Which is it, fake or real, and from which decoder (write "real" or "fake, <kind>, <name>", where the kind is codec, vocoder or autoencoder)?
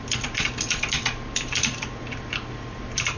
fake, vocoder, BigVGAN v2